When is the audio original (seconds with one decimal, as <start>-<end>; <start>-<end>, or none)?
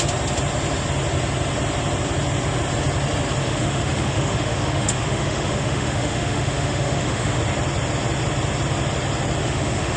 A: 0.0-3.4; 7.4-9.4